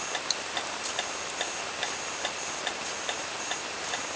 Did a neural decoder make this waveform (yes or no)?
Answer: no